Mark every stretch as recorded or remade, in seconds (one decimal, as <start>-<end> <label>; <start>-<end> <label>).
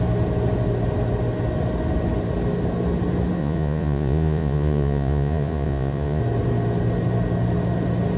0.0-3.4 recorded; 3.4-6.2 remade; 6.2-8.2 recorded